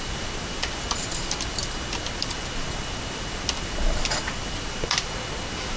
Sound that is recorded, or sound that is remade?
recorded